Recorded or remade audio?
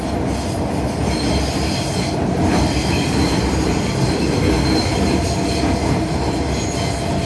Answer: recorded